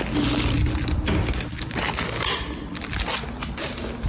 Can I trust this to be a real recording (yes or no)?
yes